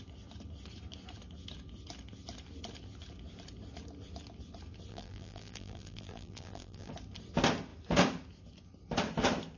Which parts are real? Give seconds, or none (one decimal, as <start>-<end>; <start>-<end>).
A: 0.0-4.9; 6.9-9.6